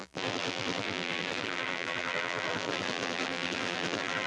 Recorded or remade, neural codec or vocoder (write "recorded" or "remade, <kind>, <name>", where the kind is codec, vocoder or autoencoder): remade, vocoder, BigVGAN v2